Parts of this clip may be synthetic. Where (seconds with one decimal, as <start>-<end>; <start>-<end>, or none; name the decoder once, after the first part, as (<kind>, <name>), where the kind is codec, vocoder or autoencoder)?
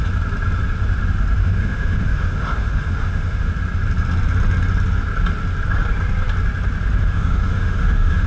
1.4-3.5 (autoencoder, DAC-VAE); 7.0-8.3